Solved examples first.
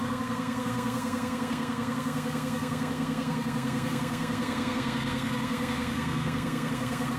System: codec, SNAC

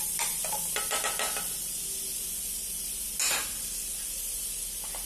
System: none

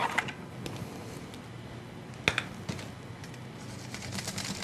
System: none